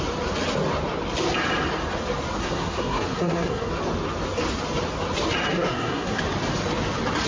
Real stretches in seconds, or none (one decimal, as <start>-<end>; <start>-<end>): 0.0-2.4; 3.7-5.5; 6.2-7.3